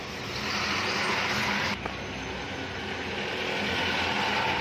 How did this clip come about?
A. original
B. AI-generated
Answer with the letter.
A